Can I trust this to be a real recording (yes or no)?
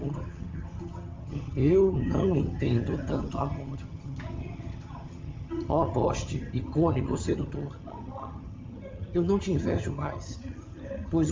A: no